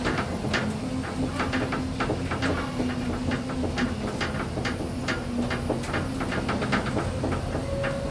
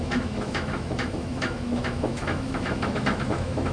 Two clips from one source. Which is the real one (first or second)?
first